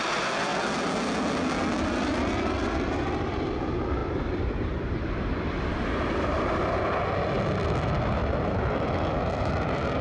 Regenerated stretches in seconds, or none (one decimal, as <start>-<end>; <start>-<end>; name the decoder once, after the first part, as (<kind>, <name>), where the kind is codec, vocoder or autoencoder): 4.0-5.0 (vocoder, BigVGAN v2)